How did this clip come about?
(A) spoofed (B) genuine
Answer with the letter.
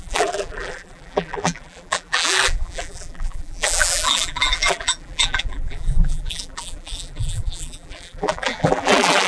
A